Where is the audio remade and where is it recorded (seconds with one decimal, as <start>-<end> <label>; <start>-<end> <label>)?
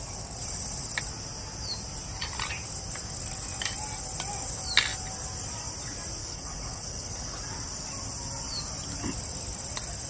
0.0-6.2 recorded; 6.2-7.4 remade; 7.4-10.1 recorded